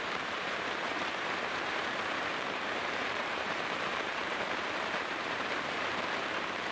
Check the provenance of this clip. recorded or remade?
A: remade